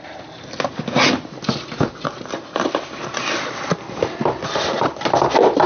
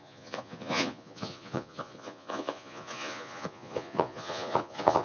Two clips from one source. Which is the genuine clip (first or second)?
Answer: first